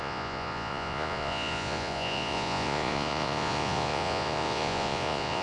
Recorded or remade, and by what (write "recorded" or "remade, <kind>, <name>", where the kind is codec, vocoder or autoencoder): remade, vocoder, Vocos